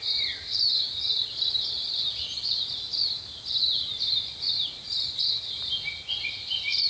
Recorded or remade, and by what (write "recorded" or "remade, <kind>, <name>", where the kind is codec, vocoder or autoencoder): recorded